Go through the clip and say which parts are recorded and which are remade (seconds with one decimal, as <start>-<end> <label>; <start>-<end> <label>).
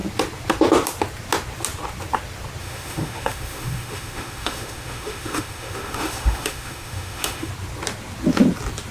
0.0-2.6 recorded; 2.6-7.5 remade; 7.5-8.9 recorded